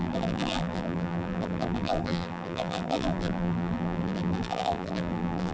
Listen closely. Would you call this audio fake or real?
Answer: fake